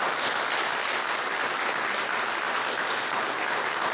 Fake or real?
real